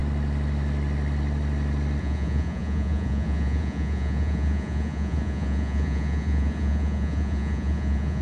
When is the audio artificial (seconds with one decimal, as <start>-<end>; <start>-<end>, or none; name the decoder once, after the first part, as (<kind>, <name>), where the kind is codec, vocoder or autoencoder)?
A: 2.0-8.2 (vocoder, Vocos)